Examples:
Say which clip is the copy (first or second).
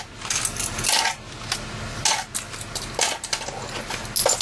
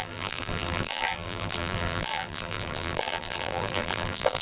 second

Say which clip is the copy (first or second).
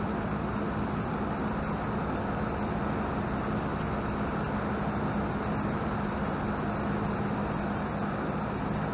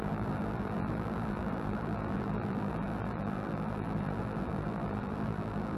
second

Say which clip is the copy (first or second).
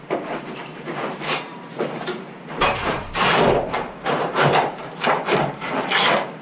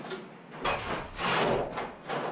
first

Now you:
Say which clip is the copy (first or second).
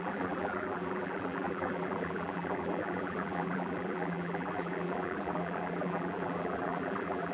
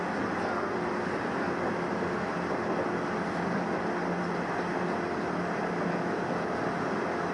first